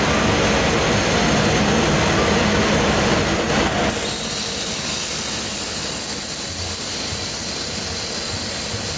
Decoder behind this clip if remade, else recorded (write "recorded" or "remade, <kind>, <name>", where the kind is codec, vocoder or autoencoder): recorded